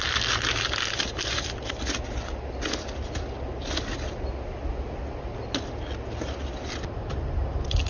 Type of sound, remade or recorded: recorded